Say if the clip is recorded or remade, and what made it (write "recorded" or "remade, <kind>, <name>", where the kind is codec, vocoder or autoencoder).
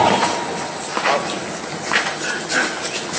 recorded